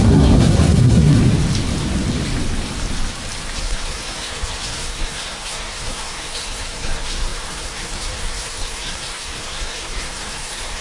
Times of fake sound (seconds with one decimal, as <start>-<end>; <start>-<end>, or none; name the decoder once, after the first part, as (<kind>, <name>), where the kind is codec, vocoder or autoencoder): 0.0-1.2 (codec, SNAC); 3.6-10.8